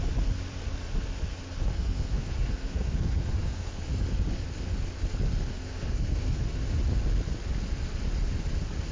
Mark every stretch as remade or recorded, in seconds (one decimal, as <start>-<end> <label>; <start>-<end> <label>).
0.0-1.7 recorded; 1.7-3.8 remade; 3.8-5.5 recorded; 5.5-6.6 remade; 6.6-8.9 recorded